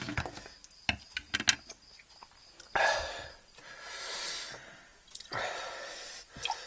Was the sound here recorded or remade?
recorded